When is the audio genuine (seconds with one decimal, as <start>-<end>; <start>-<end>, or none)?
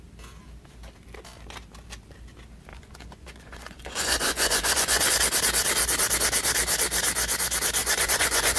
0.0-2.7; 5.1-7.8